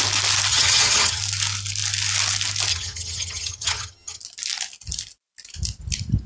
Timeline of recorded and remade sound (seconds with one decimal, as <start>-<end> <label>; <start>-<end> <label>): 0.0-0.5 recorded; 0.5-1.2 remade; 1.2-2.7 recorded; 2.7-4.2 remade; 4.2-6.3 recorded